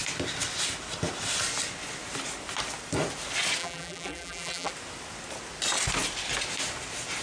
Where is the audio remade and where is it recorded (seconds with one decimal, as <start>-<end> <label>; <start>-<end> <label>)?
0.0-3.6 recorded; 3.6-4.7 remade; 4.7-7.2 recorded